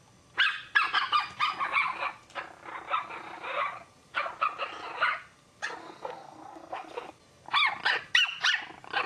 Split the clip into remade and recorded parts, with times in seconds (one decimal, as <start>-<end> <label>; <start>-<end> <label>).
0.0-5.8 recorded; 5.8-7.1 remade; 7.1-9.1 recorded